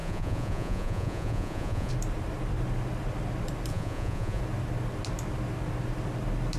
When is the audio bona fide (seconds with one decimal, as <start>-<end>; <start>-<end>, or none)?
1.9-3.7; 4.4-6.6